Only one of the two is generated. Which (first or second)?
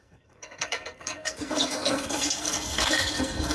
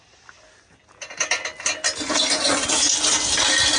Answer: first